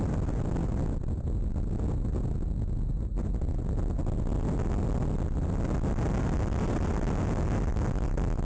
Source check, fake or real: real